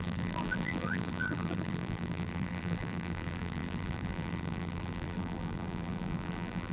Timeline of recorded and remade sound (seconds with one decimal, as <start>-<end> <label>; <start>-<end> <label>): 0.0-6.7 remade